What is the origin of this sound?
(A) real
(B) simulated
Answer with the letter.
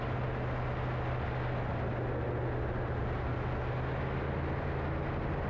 A